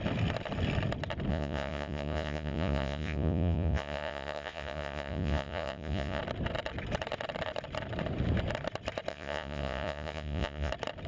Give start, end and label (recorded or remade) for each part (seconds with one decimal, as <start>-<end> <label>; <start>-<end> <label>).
0.0-1.3 recorded; 1.3-6.2 remade; 6.2-9.1 recorded; 9.1-10.7 remade; 10.7-11.1 recorded